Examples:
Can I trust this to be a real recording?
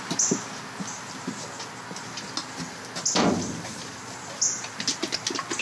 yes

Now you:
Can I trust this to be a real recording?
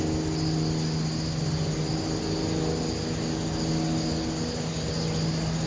yes